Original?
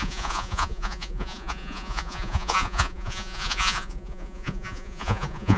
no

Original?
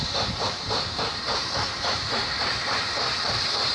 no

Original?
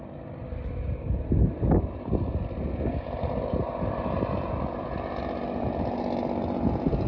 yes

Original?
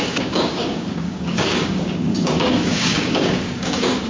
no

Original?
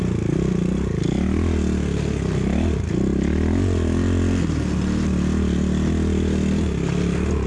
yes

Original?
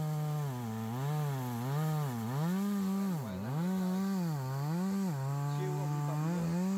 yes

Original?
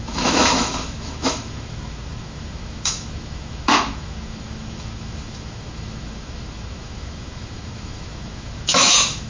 no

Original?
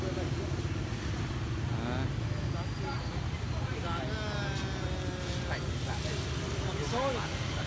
yes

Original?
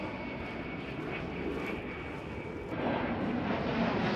yes